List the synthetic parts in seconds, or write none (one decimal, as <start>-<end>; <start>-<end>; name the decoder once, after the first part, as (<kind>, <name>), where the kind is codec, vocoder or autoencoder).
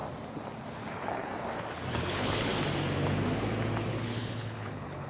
0.9-1.3 (codec, HILCodec); 1.9-2.5; 3.9-5.1